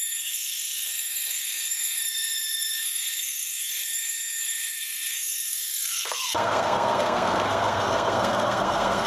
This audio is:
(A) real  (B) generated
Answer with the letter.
B